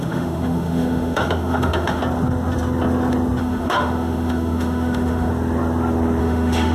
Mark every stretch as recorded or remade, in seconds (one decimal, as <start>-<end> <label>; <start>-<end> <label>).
0.0-2.0 remade; 2.0-3.4 recorded; 3.4-5.3 remade; 5.3-6.2 recorded; 6.2-6.7 remade